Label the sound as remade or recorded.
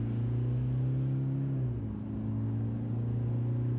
recorded